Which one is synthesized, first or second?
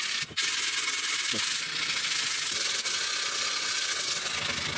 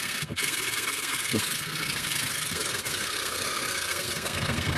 second